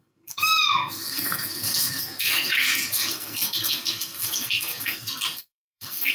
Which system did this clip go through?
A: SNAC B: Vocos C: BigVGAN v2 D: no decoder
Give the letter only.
A